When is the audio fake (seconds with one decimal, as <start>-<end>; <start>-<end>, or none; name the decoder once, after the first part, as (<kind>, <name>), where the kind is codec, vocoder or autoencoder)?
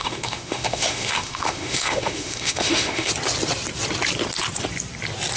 0.0-3.1 (autoencoder, DAC-VAE)